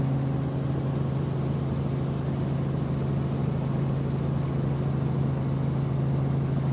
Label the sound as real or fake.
real